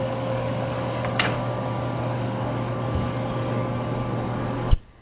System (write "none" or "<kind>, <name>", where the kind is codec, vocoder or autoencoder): codec, DAC